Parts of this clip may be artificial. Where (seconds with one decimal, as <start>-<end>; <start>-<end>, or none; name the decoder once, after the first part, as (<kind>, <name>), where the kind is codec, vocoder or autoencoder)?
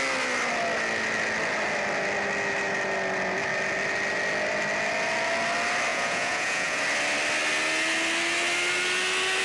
5.9-6.8 (vocoder, Vocos)